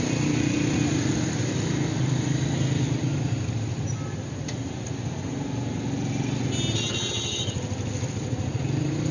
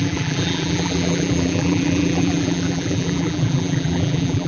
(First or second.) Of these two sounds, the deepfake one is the second